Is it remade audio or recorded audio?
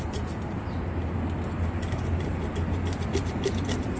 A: recorded